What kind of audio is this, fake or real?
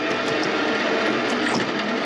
real